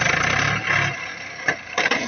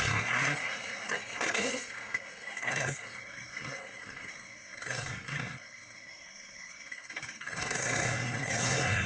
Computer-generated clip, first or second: second